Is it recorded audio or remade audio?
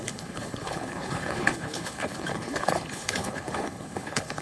remade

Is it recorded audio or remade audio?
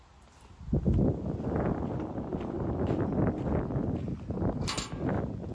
recorded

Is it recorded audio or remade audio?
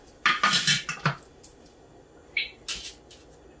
recorded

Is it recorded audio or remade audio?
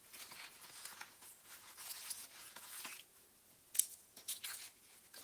remade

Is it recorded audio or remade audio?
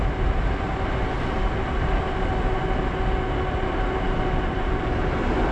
recorded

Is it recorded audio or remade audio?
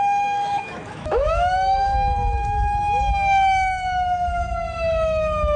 remade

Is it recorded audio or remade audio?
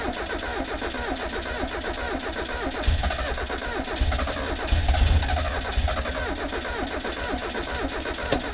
recorded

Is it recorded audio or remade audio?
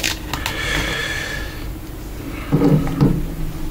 recorded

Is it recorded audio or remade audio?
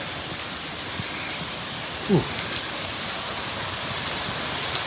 recorded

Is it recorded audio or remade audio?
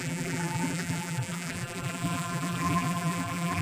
remade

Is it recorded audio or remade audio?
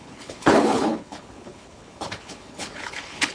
remade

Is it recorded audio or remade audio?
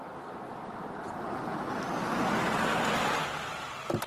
recorded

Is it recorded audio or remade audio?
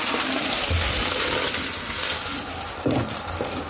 recorded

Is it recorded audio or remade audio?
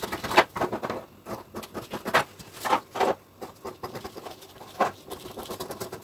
remade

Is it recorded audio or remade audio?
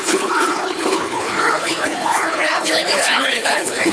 remade